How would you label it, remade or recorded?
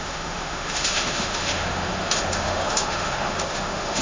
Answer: remade